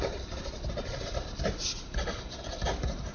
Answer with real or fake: real